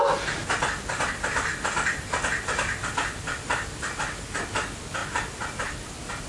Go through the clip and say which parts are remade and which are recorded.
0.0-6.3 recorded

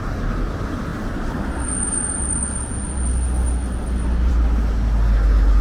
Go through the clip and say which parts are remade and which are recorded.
0.0-5.6 recorded

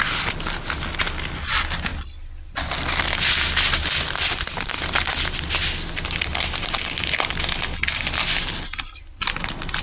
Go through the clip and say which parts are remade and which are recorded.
0.0-9.8 recorded

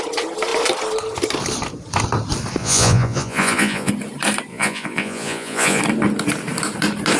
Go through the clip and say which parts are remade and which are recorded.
0.0-2.6 recorded; 2.6-3.9 remade; 3.9-4.5 recorded; 4.5-5.8 remade; 5.8-7.2 recorded

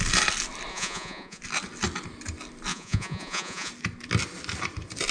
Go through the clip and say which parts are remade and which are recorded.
0.0-0.7 recorded; 0.7-1.4 remade; 1.4-2.7 recorded; 2.7-3.7 remade; 3.7-5.1 recorded

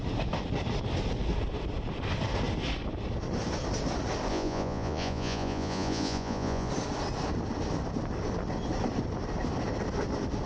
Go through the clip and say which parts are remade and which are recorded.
0.0-4.3 recorded; 4.3-6.7 remade; 6.7-10.5 recorded